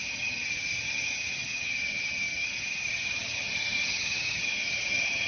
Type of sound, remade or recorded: remade